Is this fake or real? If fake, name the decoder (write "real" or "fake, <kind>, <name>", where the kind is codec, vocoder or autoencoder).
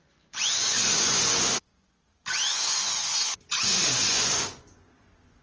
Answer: fake, vocoder, Vocos